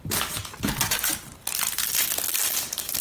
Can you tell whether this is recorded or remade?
recorded